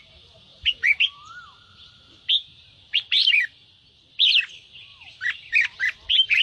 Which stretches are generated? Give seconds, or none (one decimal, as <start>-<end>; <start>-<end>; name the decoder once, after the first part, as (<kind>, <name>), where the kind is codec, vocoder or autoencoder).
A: 0.5-3.7 (vocoder, BigVGAN v2); 4.9-6.4